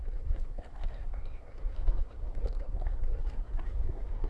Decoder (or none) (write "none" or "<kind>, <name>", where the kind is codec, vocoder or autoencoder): codec, SNAC